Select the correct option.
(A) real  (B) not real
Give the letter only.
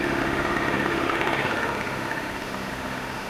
B